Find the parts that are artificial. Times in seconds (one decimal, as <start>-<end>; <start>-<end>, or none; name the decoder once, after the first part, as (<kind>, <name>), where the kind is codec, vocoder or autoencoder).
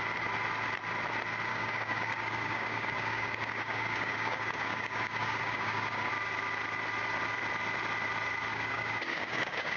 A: 1.5-6.1 (codec, DAC); 8.5-9.8